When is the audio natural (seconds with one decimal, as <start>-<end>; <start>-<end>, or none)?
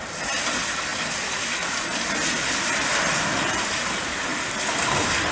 0.0-5.3